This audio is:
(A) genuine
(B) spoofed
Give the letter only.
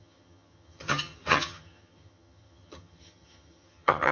B